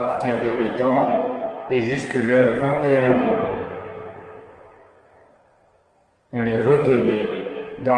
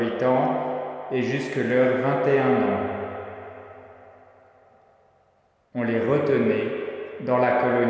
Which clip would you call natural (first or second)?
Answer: second